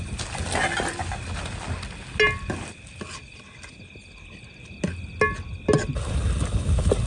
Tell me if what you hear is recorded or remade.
recorded